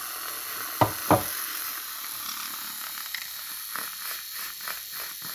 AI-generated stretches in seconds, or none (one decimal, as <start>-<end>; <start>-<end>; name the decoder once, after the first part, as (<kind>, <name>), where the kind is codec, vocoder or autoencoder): none